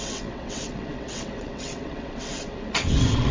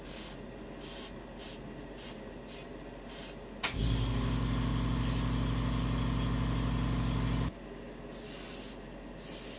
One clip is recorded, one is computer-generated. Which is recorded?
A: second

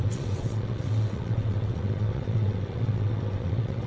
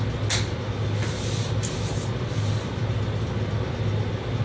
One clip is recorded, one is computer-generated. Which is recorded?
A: second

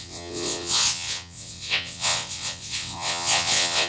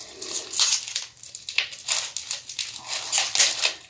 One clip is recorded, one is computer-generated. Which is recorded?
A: second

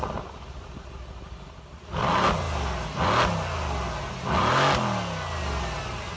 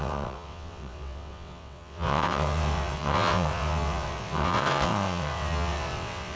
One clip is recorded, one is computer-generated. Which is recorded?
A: first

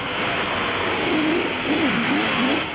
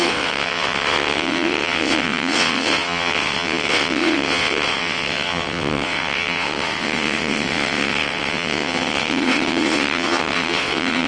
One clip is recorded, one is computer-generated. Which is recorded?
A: first